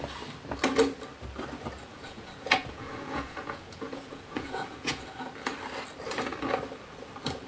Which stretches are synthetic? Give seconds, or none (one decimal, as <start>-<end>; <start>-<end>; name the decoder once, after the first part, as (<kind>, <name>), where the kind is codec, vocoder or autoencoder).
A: 1.9-5.3 (vocoder, Vocos)